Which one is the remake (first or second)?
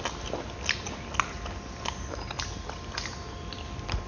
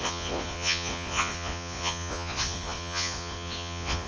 second